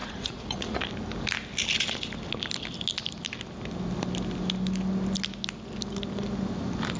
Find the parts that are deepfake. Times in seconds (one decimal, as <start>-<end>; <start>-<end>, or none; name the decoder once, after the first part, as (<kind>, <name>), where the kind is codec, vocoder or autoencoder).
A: 0.0-0.8 (vocoder, Vocos)